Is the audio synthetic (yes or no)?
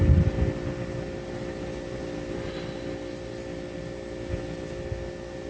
no